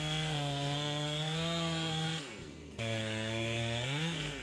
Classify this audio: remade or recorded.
remade